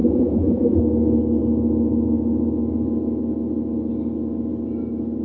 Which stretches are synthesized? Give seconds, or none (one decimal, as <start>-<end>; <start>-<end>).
0.0-0.8